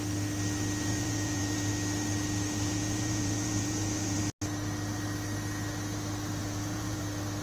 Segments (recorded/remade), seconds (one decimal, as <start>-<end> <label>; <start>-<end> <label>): 0.0-0.9 recorded; 0.9-1.6 remade; 1.6-2.7 recorded; 2.7-4.2 remade; 4.2-6.4 recorded; 6.4-7.0 remade; 7.0-7.4 recorded